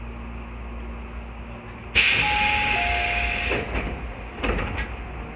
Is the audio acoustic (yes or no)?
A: yes